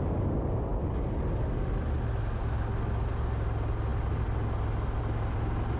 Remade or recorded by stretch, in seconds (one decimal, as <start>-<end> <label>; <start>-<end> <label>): 0.0-5.8 recorded